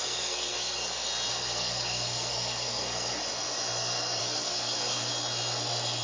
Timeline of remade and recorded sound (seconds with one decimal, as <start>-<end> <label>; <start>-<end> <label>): 0.0-0.8 remade; 0.8-1.3 recorded; 1.3-3.2 remade; 3.2-4.2 recorded; 4.2-5.1 remade; 5.1-6.0 recorded

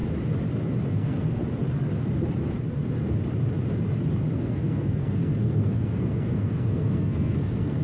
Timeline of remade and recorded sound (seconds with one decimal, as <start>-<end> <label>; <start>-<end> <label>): 0.0-0.9 recorded; 0.9-1.4 remade; 1.4-4.3 recorded; 4.3-7.8 remade

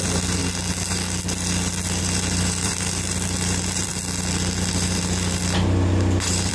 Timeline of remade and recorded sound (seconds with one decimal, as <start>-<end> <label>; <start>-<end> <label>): 0.0-0.4 remade; 0.4-2.0 recorded; 2.0-3.9 remade; 3.9-4.7 recorded; 4.7-6.5 remade

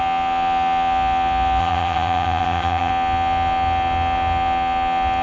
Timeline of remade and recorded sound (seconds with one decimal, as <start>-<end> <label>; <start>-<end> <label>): 0.0-1.6 recorded; 1.6-2.9 remade; 2.9-5.2 recorded

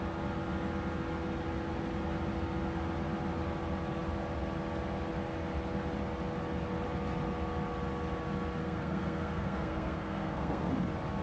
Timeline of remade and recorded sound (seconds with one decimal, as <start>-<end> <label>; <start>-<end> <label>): 0.0-8.6 recorded; 8.6-10.7 remade; 10.7-11.2 recorded